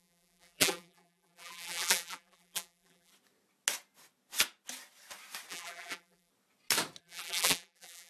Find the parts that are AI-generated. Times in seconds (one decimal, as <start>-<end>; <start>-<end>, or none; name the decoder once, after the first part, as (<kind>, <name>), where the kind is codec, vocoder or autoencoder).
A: 0.0-3.1 (vocoder, BigVGAN v2); 5.5-6.3; 7.0-8.1